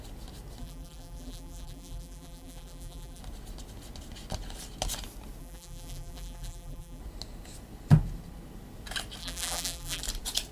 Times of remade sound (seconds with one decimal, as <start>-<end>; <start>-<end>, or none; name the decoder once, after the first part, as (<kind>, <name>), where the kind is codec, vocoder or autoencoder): 0.6-3.2 (vocoder, BigVGAN v2); 5.4-7.0; 9.2-10.0

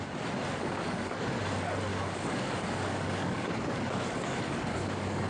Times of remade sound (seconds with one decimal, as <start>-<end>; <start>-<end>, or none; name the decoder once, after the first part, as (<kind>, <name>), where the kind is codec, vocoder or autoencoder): 0.6-1.4 (codec, DAC); 1.9-5.3

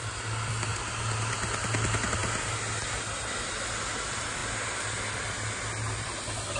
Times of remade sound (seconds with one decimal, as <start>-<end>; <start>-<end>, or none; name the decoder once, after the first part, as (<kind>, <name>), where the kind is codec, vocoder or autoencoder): none

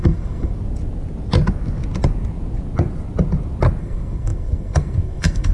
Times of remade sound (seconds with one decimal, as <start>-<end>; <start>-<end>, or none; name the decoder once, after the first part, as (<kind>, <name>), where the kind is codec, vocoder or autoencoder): 0.0-0.5 (codec, SNAC); 3.8-5.5

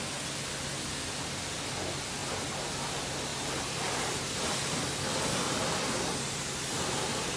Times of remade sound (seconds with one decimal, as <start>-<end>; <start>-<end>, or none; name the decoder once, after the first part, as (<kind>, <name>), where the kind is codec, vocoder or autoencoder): 3.3-4.8 (vocoder, BigVGAN v2)

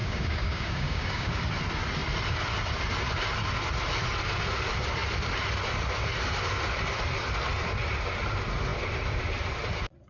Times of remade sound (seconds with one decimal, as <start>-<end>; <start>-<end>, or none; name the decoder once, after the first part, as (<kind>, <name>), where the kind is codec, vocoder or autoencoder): 0.0-1.4 (codec, DAC)